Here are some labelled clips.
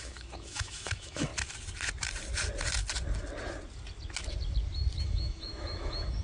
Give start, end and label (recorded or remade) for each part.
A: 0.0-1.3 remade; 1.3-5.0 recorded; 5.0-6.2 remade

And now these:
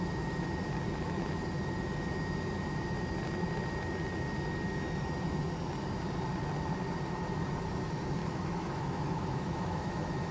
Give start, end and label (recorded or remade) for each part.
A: 0.0-8.2 recorded; 8.2-10.3 remade

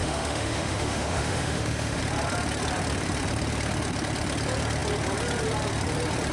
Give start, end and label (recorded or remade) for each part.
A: 0.0-2.0 remade; 2.0-6.3 recorded

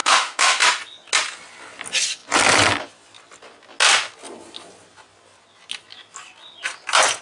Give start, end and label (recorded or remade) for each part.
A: 0.0-0.6 remade; 0.6-7.2 recorded